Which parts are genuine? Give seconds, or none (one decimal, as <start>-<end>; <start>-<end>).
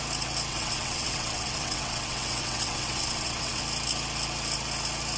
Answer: 0.0-0.5; 3.6-5.2